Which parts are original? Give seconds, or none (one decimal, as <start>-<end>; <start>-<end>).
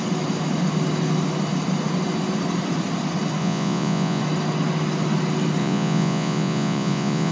0.0-3.4; 4.2-5.6